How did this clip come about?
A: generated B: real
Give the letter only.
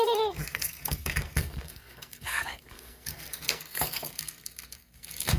A